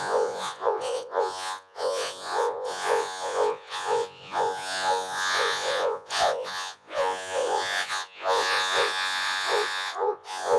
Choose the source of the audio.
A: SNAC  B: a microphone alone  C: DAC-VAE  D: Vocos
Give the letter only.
D